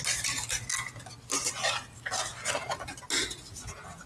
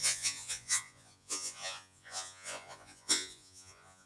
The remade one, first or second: second